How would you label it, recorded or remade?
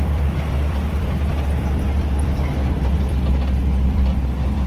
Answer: remade